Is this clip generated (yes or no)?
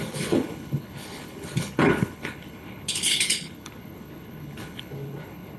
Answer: yes